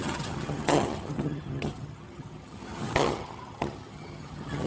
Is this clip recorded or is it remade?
remade